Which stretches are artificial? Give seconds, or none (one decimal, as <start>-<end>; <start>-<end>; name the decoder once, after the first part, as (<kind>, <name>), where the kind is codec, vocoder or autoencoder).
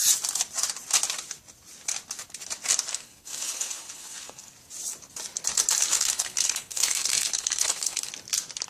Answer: 2.9-4.5 (codec, SNAC); 5.9-8.1